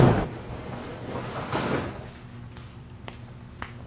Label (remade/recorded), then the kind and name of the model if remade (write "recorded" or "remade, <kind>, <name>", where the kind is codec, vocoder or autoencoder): recorded